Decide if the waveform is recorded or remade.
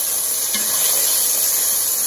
recorded